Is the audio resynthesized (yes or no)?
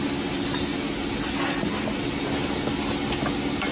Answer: no